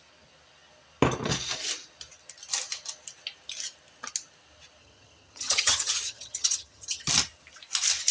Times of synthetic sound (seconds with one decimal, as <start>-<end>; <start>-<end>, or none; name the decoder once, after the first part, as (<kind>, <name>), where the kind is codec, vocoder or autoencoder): 4.8-7.1 (vocoder, HiFi-GAN)